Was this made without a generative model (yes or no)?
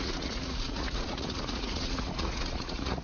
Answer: no